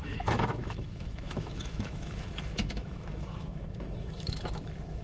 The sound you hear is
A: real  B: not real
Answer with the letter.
B